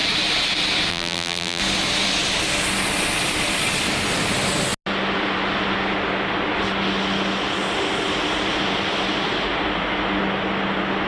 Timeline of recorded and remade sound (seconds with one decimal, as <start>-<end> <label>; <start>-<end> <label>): 0.0-0.9 recorded; 0.9-1.6 remade; 1.6-11.1 recorded